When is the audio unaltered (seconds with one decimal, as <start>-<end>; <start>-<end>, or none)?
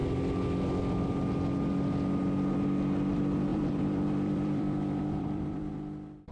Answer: 0.0-3.5; 5.7-6.3